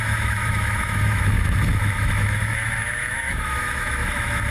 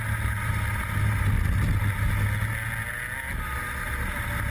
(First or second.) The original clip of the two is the second